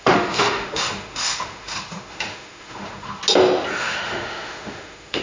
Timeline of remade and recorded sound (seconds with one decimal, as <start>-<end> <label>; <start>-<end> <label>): 0.0-3.2 remade; 3.2-3.7 recorded; 3.7-5.2 remade